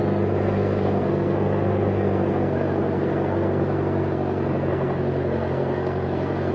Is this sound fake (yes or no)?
yes